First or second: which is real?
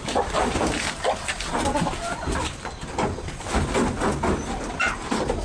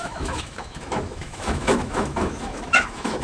first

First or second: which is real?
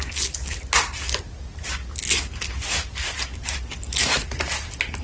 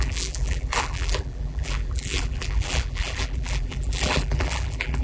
first